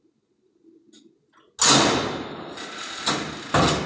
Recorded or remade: recorded